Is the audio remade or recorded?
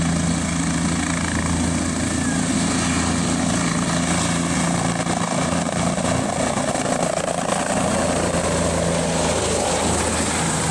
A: recorded